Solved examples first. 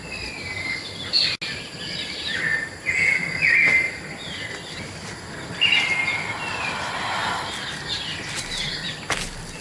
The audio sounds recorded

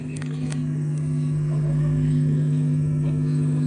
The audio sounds remade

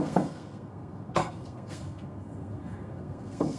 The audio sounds remade